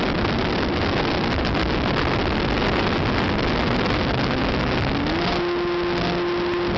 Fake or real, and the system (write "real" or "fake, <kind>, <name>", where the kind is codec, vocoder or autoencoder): real